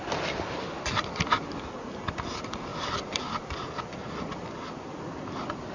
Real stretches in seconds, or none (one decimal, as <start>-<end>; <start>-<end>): 0.0-5.7